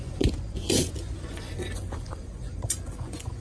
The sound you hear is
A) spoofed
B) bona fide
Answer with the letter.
A